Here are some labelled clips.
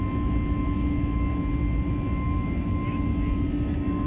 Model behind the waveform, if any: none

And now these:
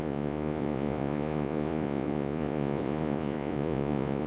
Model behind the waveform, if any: vocoder, Vocos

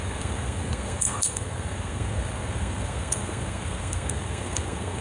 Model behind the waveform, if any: codec, SNAC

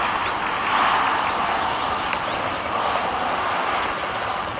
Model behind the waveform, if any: none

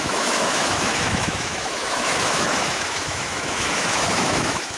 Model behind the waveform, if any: autoencoder, DAC-VAE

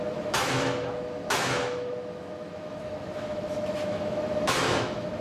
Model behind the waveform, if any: autoencoder, DAC-VAE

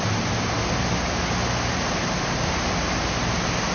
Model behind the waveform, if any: none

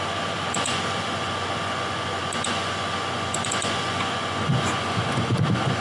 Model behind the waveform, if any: vocoder, Vocos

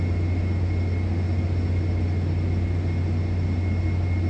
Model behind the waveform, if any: none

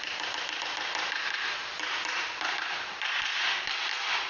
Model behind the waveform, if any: none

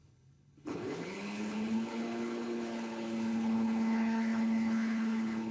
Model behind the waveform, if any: codec, HILCodec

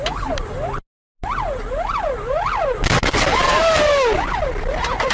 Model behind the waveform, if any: none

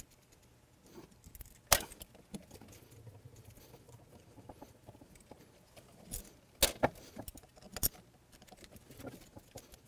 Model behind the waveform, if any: none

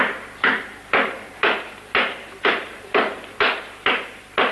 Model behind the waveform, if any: vocoder, BigVGAN v2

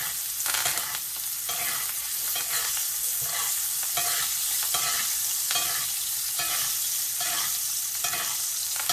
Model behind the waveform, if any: none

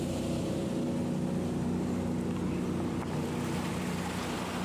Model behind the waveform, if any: none